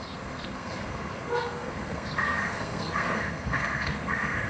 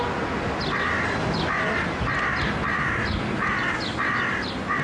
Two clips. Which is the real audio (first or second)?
second